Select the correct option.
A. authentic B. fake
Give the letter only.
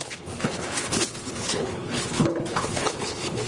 B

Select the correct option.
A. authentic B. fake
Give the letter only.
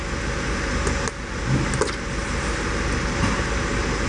A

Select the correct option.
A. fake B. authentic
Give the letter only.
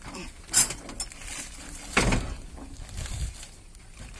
B